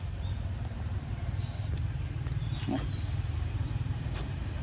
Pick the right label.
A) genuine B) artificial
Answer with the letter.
A